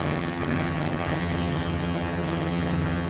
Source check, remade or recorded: remade